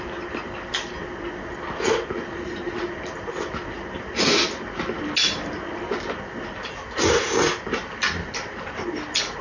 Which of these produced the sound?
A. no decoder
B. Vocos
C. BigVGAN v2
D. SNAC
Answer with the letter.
A